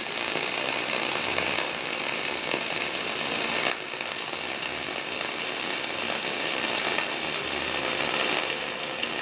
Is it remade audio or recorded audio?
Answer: recorded